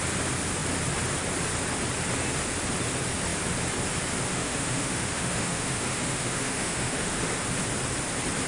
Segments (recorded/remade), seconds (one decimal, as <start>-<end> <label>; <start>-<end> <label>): 0.0-4.3 recorded; 4.3-7.2 remade; 7.2-8.5 recorded